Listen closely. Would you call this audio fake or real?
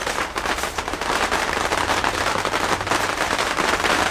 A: fake